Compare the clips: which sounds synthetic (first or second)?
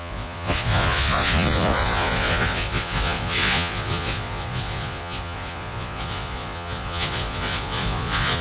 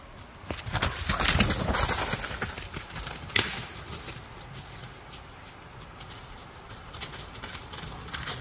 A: first